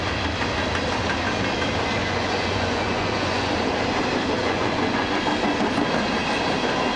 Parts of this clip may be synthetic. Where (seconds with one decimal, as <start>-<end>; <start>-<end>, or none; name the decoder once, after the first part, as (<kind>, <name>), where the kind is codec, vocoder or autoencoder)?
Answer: 2.0-3.5 (vocoder, Vocos); 4.4-5.2